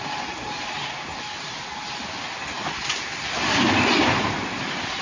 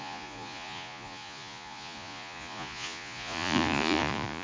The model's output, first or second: second